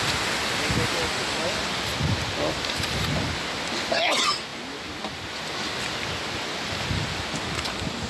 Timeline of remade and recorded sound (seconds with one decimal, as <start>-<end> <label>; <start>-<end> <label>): 0.0-8.1 recorded